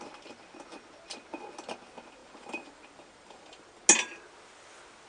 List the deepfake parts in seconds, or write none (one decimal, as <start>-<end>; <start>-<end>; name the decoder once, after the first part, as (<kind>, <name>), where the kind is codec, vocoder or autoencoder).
2.2-3.8 (vocoder, BigVGAN v2)